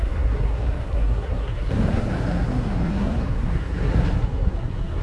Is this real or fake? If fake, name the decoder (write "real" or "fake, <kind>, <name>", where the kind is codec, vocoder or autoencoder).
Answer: fake, codec, SNAC